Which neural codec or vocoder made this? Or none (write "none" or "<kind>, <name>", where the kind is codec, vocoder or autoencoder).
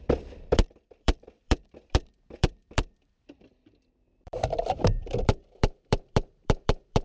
vocoder, BigVGAN v2